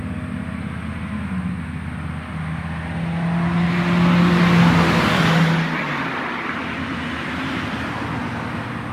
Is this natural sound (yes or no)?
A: yes